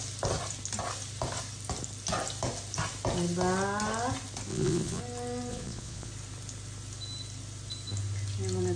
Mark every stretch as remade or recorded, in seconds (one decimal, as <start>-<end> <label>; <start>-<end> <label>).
0.0-4.5 recorded; 4.5-5.0 remade; 5.0-5.5 recorded; 5.5-6.1 remade; 6.1-8.8 recorded